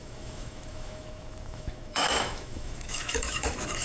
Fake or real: fake